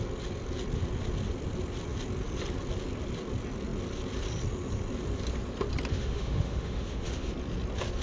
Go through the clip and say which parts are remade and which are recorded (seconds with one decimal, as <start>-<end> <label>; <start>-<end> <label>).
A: 0.0-5.9 recorded; 5.9-7.3 remade; 7.3-8.0 recorded